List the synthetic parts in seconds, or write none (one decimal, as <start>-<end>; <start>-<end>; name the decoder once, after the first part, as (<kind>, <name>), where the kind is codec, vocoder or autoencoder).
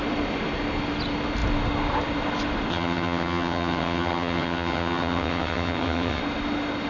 2.7-6.2 (vocoder, HiFi-GAN)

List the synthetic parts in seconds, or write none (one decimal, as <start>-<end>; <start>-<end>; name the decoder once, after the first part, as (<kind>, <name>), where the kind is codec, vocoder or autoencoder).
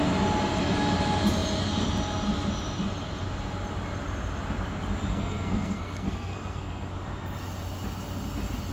5.1-6.9 (codec, SNAC)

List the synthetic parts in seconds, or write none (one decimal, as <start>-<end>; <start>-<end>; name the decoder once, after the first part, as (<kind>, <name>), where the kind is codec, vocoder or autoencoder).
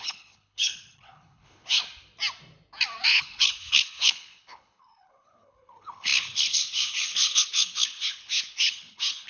0.0-1.8 (codec, HILCodec); 3.1-9.3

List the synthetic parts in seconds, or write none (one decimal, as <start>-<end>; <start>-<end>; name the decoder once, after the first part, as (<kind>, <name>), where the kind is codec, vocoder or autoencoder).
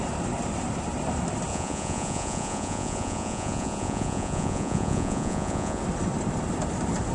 1.5-5.8 (vocoder, Vocos)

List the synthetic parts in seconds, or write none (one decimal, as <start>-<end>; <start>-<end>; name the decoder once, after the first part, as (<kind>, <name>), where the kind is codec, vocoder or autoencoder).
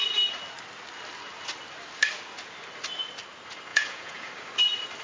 3.7-4.3 (vocoder, Vocos)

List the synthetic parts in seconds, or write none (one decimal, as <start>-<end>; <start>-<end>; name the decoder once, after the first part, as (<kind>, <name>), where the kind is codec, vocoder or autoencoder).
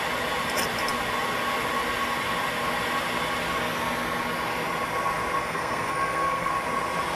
5.4-6.5 (codec, SNAC)